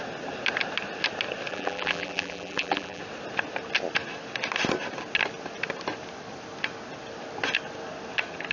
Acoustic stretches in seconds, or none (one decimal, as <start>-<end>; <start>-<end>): 0.0-1.5; 3.0-8.5